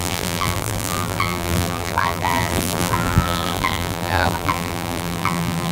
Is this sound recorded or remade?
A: remade